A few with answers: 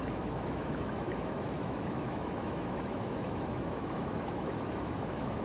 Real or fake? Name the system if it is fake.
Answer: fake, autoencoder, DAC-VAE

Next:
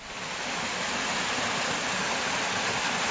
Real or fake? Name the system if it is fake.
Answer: real